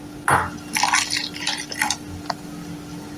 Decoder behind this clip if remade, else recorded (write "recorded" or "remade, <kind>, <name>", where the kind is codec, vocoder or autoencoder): recorded